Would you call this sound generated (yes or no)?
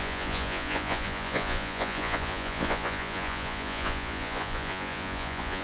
yes